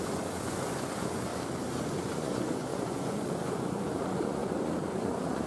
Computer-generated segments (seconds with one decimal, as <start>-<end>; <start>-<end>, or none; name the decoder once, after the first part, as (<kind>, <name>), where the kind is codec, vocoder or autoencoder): 0.0-1.3 (vocoder, Vocos); 1.9-5.5